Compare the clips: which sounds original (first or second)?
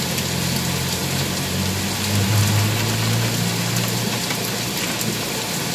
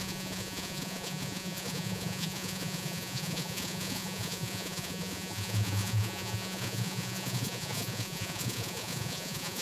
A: first